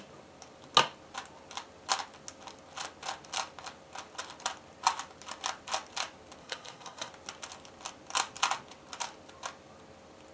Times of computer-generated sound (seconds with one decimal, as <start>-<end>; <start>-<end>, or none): 6.4-7.1